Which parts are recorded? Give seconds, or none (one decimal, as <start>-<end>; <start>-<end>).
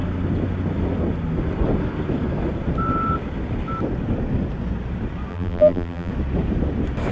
0.0-5.3; 6.1-7.1